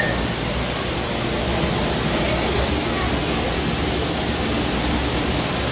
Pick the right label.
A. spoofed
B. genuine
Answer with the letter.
B